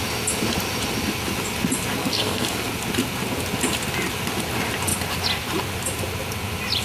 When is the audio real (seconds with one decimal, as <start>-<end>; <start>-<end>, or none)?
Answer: 0.0-2.0; 2.7-6.8